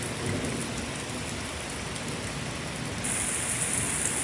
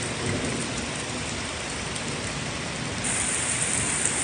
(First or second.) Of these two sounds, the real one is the first